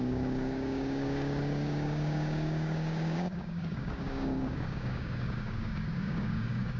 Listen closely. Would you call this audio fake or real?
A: fake